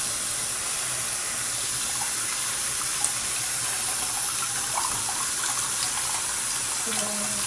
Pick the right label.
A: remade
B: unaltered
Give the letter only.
B